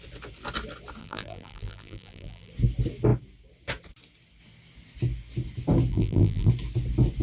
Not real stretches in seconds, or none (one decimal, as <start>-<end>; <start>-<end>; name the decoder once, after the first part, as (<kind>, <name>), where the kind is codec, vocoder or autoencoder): 1.0-2.5 (vocoder, BigVGAN v2); 5.9-6.5